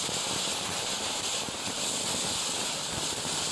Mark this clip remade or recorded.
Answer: recorded